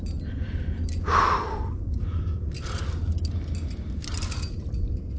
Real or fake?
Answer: real